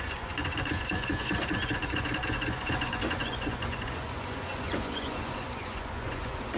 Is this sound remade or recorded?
remade